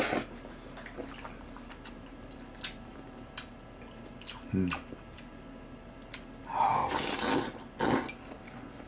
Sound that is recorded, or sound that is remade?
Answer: recorded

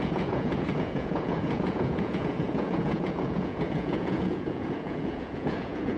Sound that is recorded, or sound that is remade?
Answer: remade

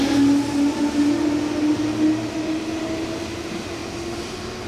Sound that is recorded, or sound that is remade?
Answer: recorded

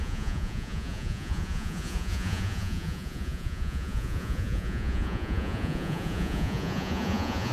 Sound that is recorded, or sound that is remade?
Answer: remade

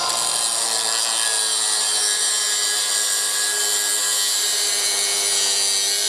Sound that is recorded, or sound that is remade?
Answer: recorded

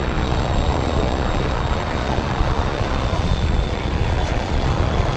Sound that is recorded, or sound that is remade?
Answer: remade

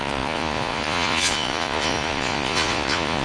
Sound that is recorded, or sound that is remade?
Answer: remade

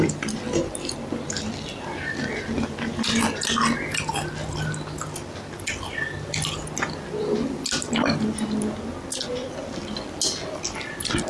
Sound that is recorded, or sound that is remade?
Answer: recorded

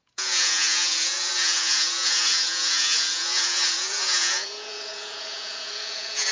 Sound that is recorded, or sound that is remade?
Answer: remade